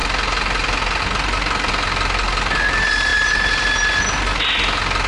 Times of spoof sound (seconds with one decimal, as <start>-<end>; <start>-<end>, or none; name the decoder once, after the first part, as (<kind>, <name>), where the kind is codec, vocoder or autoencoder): none